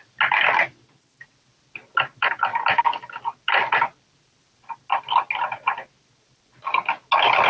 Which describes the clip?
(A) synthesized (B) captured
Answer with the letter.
B